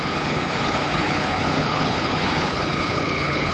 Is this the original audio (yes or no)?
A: no